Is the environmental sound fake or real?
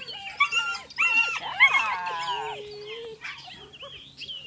real